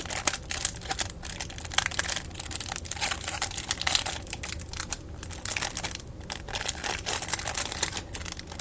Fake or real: real